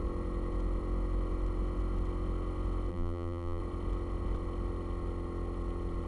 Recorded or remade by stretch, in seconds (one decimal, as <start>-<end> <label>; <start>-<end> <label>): 0.0-2.9 recorded; 2.9-3.6 remade; 3.6-6.1 recorded